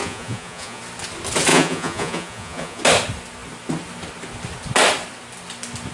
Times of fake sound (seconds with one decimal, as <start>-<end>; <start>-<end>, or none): 0.0-0.8; 1.5-2.8